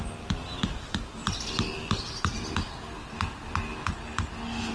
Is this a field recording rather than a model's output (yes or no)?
yes